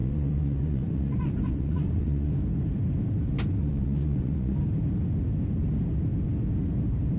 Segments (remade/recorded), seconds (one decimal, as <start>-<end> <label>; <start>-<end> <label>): 0.0-2.3 remade; 2.3-3.6 recorded; 3.6-4.6 remade; 4.6-7.2 recorded